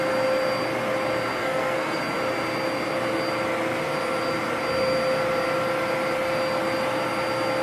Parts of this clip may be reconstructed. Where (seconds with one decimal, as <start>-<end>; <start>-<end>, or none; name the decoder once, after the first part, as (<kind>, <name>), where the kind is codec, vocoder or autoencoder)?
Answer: 1.4-2.0 (codec, SNAC)